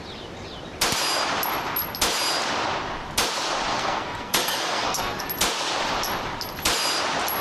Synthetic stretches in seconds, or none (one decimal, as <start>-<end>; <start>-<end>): 3.7-5.2